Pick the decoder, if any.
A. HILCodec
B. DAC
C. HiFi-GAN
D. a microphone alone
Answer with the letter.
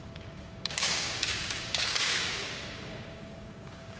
B